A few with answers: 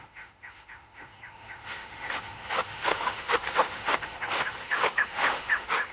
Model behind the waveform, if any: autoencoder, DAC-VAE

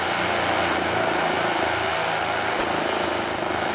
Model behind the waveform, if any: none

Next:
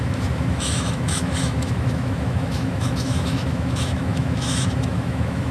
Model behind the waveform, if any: autoencoder, DAC-VAE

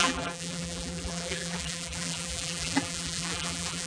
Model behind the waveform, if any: vocoder, BigVGAN v2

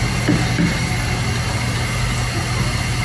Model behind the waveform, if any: none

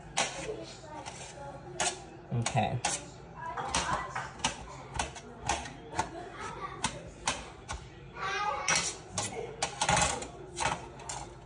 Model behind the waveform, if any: none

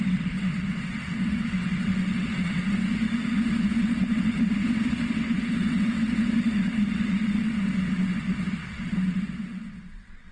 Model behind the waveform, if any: vocoder, WaveNeXt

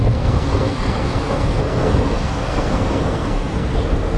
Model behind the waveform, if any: codec, SNAC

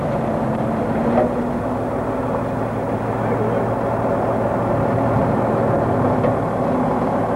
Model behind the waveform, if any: none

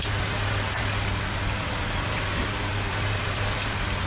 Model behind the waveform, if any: vocoder, BigVGAN v2